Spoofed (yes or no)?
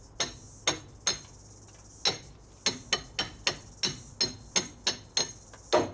no